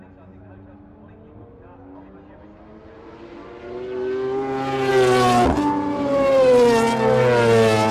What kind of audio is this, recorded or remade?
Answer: recorded